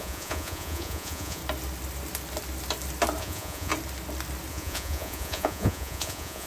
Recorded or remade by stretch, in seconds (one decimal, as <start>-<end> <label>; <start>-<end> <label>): 0.0-1.4 remade; 1.4-3.2 recorded; 3.2-3.7 remade; 3.7-4.5 recorded; 4.5-6.5 remade